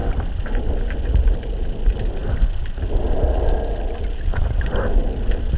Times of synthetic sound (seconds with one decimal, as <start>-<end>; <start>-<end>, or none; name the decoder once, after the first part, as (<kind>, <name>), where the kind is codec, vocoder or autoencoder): none